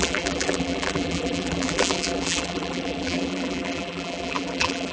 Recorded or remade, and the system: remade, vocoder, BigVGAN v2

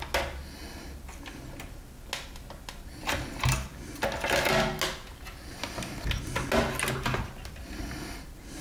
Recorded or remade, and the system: recorded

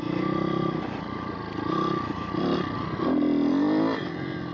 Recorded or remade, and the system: recorded